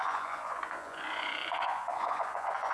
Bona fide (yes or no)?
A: no